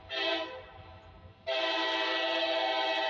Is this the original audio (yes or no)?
yes